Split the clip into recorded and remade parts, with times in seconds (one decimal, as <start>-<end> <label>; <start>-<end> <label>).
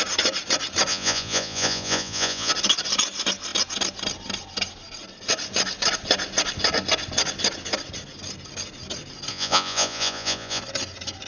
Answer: 0.0-0.9 recorded; 0.9-2.5 remade; 2.5-9.3 recorded; 9.3-10.6 remade; 10.6-11.3 recorded